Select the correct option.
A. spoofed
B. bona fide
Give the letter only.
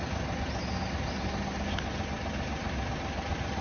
B